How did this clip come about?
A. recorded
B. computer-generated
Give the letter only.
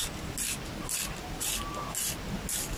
A